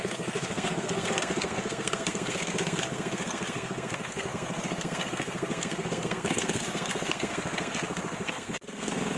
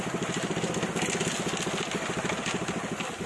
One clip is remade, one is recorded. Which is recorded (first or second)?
second